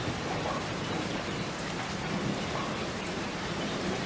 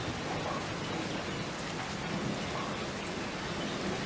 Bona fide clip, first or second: second